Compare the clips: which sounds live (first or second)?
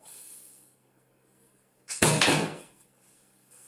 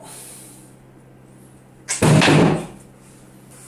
second